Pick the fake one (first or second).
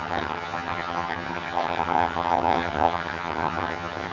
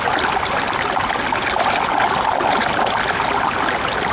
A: first